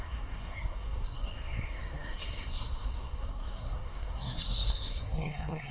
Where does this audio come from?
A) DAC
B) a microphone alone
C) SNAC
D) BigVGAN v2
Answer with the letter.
C